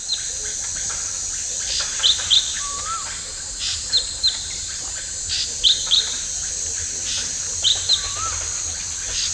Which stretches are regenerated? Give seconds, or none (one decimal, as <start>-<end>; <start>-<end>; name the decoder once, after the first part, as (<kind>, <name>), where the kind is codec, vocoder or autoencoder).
1.9-6.5 (vocoder, BigVGAN v2); 7.2-8.2

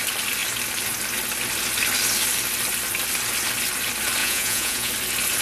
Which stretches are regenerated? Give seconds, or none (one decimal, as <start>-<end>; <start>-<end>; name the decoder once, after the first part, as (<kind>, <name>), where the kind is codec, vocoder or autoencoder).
4.2-4.9 (vocoder, Vocos)

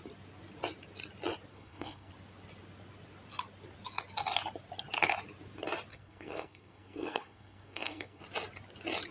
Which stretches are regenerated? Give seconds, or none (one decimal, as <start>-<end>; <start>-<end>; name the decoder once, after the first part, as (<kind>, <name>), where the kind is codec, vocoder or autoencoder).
1.5-2.1 (codec, SNAC); 5.9-8.2

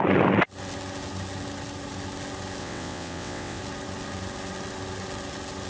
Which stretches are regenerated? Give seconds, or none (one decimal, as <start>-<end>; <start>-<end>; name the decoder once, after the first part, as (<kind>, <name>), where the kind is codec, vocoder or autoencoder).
2.6-3.6 (vocoder, WaveNeXt)